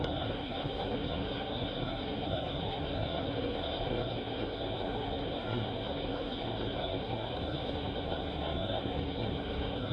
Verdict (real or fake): fake